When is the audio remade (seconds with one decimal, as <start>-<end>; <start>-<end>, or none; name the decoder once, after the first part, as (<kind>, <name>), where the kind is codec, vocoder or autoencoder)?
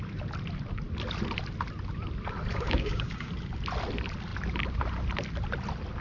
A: 2.5-3.3 (codec, DAC)